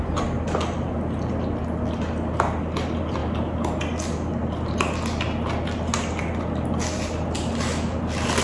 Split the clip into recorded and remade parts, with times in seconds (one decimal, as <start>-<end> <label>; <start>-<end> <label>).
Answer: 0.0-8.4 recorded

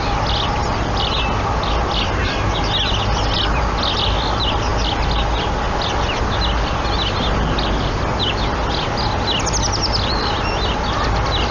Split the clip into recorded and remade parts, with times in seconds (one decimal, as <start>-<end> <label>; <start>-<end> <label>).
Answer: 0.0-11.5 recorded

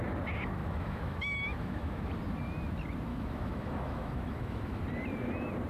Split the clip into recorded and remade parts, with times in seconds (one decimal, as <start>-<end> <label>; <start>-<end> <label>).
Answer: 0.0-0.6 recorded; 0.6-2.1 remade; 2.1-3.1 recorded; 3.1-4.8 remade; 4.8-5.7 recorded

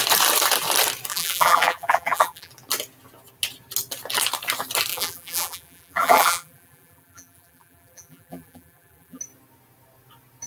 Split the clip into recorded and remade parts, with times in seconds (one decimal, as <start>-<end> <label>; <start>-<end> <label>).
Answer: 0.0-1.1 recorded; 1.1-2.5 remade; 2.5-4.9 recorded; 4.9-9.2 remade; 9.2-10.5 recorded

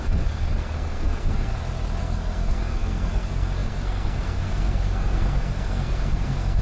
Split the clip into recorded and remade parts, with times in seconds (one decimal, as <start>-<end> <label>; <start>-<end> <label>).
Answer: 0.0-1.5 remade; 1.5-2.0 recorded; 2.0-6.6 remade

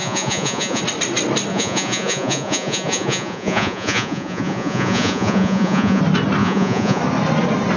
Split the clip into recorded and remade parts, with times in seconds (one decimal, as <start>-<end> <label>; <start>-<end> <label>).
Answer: 0.0-0.8 remade; 0.8-1.5 recorded; 1.5-6.0 remade; 6.0-6.4 recorded; 6.4-7.0 remade; 7.0-7.8 recorded

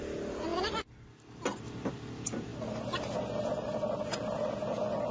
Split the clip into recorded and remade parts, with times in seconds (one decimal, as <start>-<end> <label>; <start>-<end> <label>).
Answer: 0.0-5.1 recorded

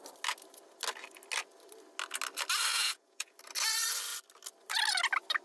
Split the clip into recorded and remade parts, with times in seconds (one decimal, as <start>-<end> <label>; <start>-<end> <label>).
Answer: 0.0-2.7 recorded; 2.7-3.4 remade; 3.4-5.4 recorded